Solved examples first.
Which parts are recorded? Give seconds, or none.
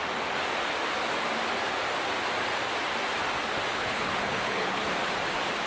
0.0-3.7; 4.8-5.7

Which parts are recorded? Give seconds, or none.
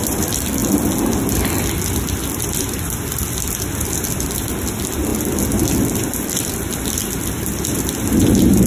0.6-2.3; 5.1-5.7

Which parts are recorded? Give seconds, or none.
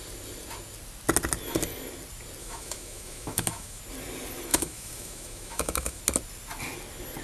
0.0-2.4; 3.8-4.5; 6.0-7.2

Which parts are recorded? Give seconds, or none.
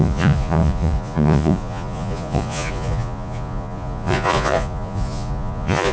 none